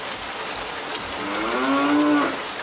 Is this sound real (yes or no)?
yes